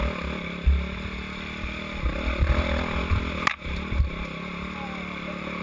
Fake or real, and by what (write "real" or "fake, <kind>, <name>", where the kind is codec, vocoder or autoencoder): real